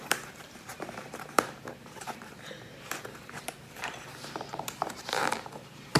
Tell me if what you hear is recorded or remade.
remade